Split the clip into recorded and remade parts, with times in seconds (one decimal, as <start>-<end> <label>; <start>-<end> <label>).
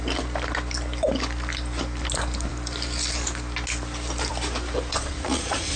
0.0-4.9 recorded; 4.9-5.8 remade